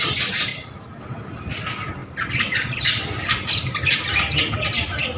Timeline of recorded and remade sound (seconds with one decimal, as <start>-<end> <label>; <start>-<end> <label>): 0.0-0.5 recorded; 0.5-1.0 remade; 1.0-2.0 recorded; 2.0-4.5 remade; 4.5-5.2 recorded